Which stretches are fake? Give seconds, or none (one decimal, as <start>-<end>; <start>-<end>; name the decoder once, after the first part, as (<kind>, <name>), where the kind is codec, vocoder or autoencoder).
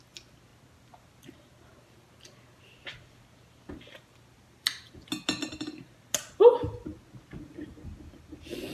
none